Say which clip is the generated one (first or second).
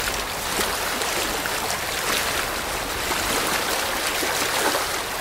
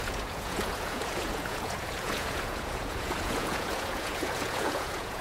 second